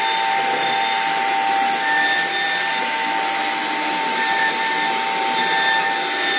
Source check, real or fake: real